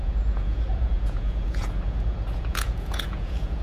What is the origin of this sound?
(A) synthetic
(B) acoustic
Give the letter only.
A